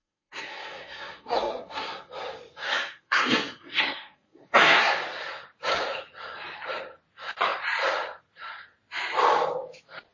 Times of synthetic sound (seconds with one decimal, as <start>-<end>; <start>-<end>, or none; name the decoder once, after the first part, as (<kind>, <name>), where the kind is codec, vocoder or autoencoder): 0.0-2.1 (codec, SNAC); 2.7-4.9